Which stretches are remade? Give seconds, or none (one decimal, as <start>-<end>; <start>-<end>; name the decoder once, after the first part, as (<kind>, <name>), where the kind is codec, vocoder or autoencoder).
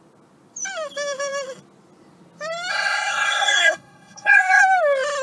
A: 2.7-4.6 (codec, SNAC)